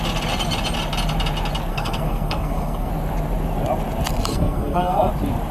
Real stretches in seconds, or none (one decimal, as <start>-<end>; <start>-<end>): 0.0-1.7; 2.9-4.3; 5.1-5.5